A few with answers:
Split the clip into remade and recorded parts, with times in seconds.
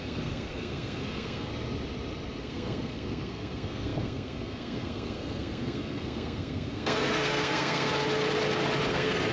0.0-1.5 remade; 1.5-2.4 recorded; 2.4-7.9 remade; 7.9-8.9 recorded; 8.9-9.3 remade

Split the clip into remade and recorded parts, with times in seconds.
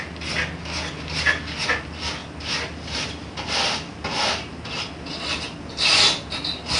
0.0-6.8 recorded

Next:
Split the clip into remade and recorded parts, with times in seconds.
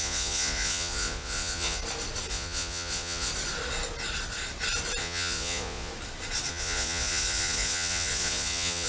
0.0-1.8 remade; 1.8-2.3 recorded; 2.3-3.3 remade; 3.3-5.0 recorded; 5.0-5.9 remade; 5.9-6.5 recorded; 6.5-8.9 remade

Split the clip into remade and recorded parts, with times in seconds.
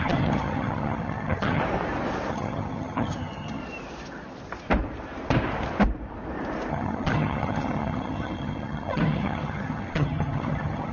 0.0-1.6 remade; 1.6-2.3 recorded; 2.3-3.6 remade; 3.6-6.7 recorded; 6.7-10.9 remade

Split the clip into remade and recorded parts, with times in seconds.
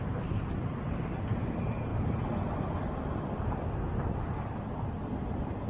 0.0-5.7 recorded